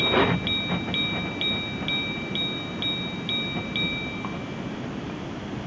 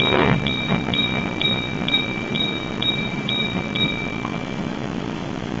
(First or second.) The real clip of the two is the first